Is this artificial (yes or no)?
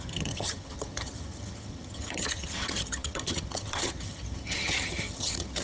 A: yes